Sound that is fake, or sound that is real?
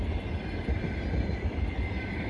real